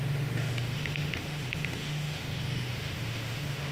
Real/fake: fake